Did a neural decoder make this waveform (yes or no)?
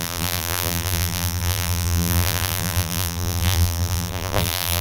yes